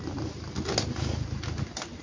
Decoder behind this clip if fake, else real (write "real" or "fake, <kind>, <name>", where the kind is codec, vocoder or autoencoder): real